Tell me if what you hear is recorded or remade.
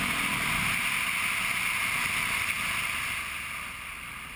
recorded